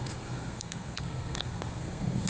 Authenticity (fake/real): fake